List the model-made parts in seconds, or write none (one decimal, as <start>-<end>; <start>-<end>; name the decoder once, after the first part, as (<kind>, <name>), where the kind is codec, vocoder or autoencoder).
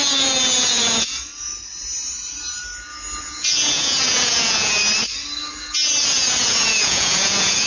0.0-1.3 (vocoder, Vocos); 3.2-4.8; 6.0-7.7